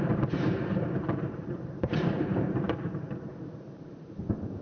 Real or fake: fake